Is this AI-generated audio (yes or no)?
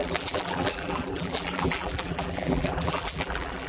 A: yes